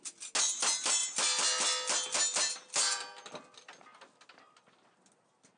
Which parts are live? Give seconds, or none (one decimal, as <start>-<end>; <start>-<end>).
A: 0.0-5.6